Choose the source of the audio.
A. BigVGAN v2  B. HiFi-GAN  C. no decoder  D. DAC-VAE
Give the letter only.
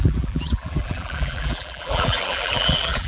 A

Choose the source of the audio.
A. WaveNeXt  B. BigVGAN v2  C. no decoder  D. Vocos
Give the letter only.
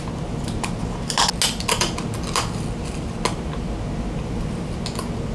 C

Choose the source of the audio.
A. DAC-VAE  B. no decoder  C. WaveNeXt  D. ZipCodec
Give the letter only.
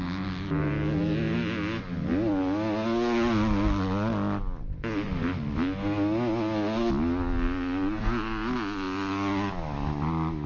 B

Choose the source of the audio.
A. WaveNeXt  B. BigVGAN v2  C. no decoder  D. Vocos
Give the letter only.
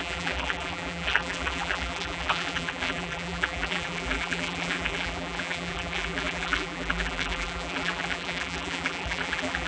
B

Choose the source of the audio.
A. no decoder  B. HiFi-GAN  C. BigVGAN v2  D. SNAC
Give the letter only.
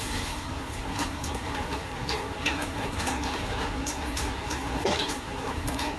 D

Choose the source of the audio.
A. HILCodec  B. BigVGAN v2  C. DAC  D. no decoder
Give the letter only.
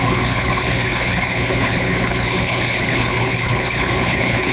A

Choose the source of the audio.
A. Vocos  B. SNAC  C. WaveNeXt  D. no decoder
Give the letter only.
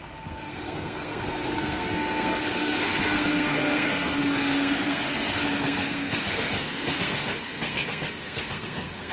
B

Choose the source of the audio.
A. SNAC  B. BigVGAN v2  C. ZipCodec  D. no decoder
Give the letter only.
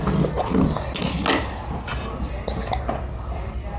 D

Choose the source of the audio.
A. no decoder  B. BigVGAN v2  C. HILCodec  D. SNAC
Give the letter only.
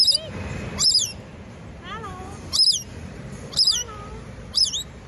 B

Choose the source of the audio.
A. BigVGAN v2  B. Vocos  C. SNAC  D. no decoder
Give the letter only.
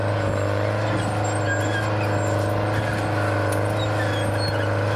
D